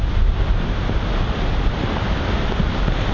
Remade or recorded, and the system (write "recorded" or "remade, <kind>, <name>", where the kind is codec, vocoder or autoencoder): recorded